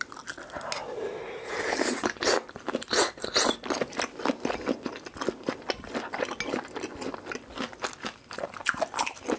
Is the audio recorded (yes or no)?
yes